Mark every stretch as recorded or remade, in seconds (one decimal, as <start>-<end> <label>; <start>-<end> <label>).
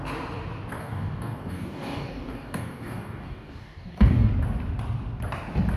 0.0-0.8 recorded; 0.8-4.3 remade; 4.3-5.8 recorded